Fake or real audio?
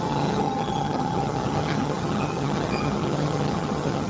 fake